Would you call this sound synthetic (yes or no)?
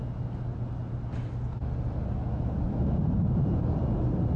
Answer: no